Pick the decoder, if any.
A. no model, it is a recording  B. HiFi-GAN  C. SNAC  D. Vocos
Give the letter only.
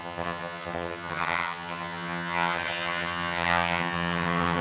B